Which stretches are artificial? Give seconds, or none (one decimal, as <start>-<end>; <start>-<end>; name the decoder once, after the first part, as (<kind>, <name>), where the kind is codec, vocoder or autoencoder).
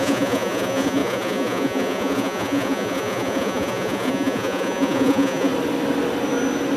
0.0-5.5 (vocoder, Vocos)